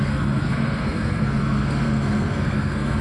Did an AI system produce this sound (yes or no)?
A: yes